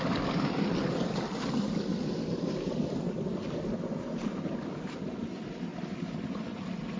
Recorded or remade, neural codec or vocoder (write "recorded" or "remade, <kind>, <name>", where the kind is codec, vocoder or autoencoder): recorded